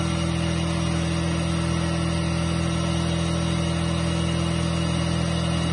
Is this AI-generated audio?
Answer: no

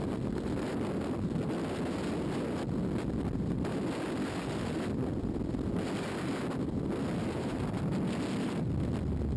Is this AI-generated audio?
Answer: no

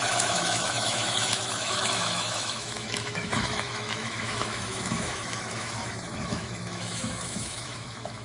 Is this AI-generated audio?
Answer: yes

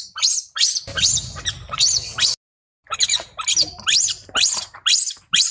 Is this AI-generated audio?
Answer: no